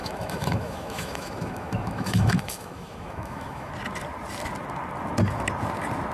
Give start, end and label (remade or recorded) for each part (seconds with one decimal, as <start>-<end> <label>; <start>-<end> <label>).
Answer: 0.0-3.7 remade; 3.7-6.1 recorded